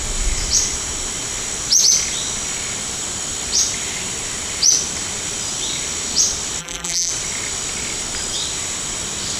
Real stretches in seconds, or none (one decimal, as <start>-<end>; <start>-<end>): 0.0-6.6; 7.1-9.4